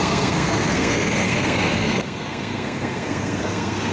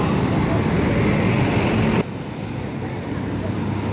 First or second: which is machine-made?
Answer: first